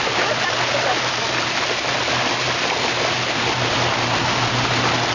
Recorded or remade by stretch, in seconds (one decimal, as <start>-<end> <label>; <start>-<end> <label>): 0.0-5.1 recorded